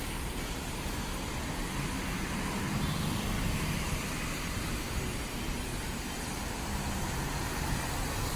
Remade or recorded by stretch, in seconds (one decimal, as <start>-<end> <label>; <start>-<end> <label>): 0.0-8.4 recorded